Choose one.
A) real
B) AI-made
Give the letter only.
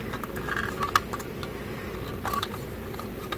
A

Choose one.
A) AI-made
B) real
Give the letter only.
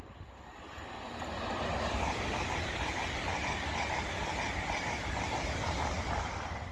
B